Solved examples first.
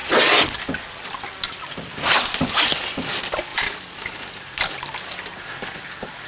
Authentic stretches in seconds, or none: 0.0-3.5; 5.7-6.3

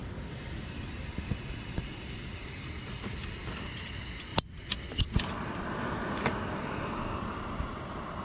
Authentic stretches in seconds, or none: 1.0-8.2

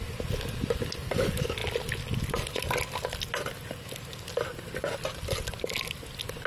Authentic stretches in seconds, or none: 0.0-6.5

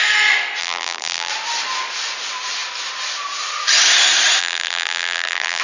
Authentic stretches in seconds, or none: 0.0-0.6; 1.3-4.4

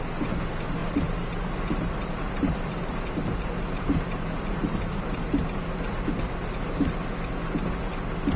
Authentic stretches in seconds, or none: 0.0-0.8; 5.0-8.4